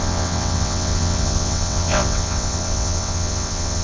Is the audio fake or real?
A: fake